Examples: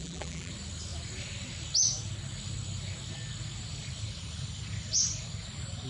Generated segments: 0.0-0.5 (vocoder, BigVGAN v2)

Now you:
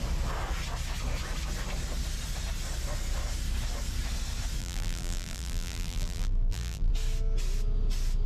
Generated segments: 4.6-6.9 (vocoder, BigVGAN v2)

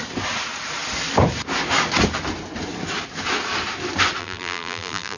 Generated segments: 4.2-5.2 (vocoder, BigVGAN v2)

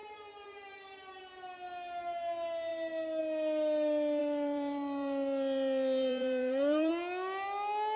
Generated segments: 0.0-1.2 (vocoder, BigVGAN v2); 4.2-6.9